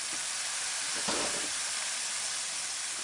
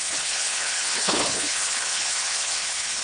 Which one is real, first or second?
first